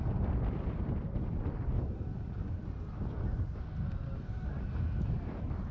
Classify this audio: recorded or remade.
recorded